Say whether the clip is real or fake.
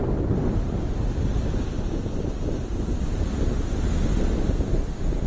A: real